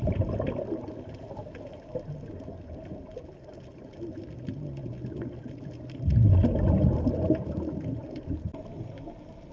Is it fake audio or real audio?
real